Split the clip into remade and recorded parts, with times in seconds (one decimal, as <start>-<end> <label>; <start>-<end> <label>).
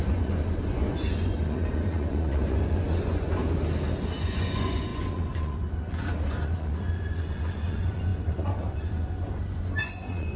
0.0-3.4 remade; 3.4-4.2 recorded; 4.2-10.4 remade